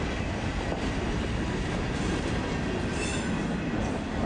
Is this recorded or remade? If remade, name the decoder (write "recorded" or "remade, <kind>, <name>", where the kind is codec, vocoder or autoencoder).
recorded